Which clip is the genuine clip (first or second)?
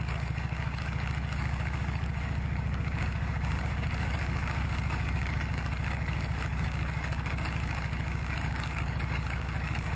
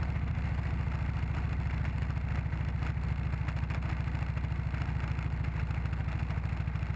second